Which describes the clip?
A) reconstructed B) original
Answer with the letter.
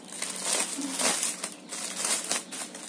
B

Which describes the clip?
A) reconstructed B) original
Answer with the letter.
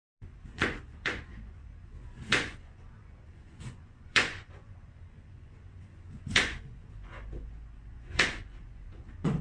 A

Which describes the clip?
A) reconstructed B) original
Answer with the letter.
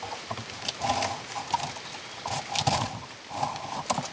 B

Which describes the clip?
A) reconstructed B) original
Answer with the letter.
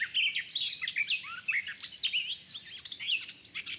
B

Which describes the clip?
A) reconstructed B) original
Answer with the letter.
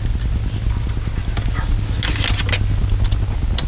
B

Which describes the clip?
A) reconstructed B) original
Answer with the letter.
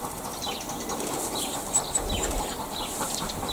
B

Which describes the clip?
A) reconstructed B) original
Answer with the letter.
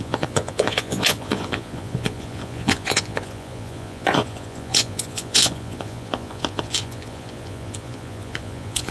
A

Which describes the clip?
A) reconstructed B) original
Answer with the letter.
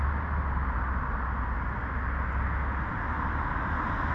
B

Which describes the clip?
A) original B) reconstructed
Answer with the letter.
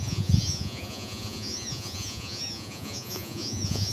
B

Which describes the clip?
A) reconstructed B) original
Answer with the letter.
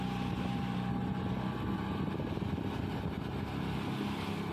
B